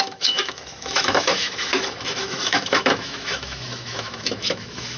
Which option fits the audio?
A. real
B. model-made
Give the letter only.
B